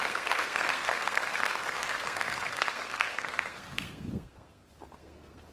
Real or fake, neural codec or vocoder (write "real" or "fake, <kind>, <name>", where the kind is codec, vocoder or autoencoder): fake, codec, SNAC